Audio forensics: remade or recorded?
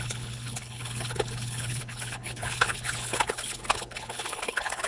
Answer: remade